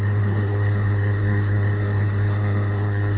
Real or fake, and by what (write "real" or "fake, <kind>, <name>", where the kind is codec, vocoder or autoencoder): fake, codec, SNAC